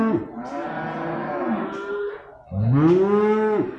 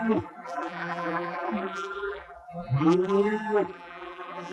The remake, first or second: second